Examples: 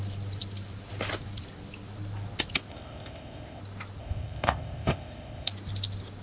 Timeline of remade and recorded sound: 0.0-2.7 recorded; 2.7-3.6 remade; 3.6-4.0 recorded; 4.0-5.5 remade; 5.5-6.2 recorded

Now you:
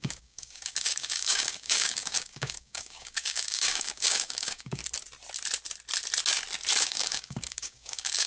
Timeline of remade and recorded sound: 0.0-4.8 remade; 4.8-6.8 recorded; 6.8-8.3 remade